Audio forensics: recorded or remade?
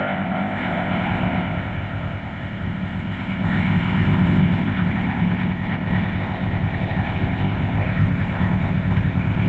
remade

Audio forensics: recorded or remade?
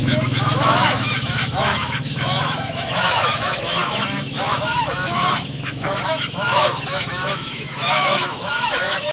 remade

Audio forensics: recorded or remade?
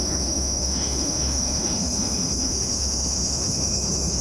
remade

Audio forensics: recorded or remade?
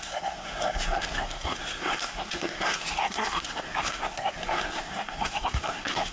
remade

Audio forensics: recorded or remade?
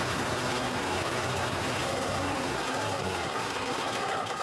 remade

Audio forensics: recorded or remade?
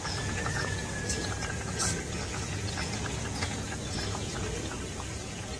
remade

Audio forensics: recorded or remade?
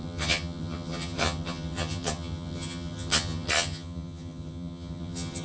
remade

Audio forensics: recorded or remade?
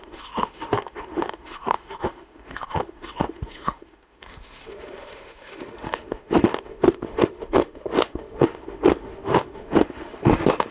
remade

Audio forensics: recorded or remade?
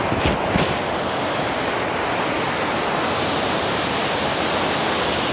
recorded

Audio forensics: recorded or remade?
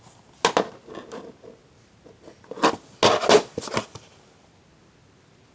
recorded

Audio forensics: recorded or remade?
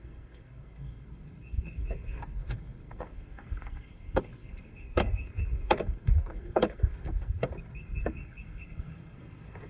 remade